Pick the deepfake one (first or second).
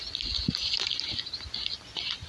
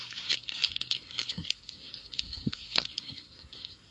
second